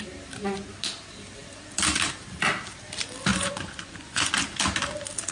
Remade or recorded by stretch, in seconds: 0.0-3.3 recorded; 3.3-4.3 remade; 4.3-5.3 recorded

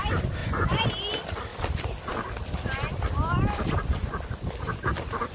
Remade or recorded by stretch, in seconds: 0.0-0.4 recorded; 0.4-0.9 remade; 0.9-5.3 recorded

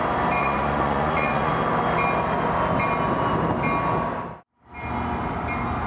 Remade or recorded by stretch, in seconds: 0.0-0.4 recorded; 0.4-1.5 remade; 1.5-5.9 recorded

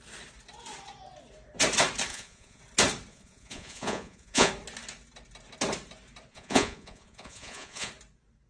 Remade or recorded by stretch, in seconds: 0.0-2.1 recorded; 2.1-2.6 remade; 2.6-3.1 recorded; 3.1-4.5 remade; 4.5-6.3 recorded; 6.3-7.9 remade; 7.9-8.5 recorded

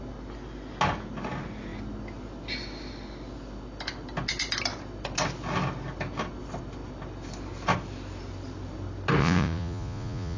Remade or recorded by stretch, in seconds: 0.0-9.2 recorded; 9.2-10.4 remade

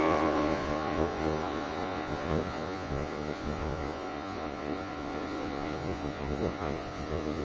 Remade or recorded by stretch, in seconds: 0.0-7.4 remade